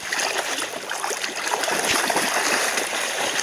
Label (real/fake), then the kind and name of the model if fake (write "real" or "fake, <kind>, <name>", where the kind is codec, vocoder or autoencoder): real